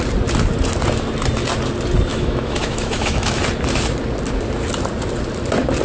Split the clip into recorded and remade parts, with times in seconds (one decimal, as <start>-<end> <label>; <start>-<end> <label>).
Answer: 0.0-2.1 recorded; 2.1-3.4 remade; 3.4-5.8 recorded